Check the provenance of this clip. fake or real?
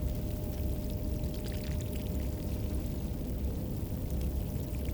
real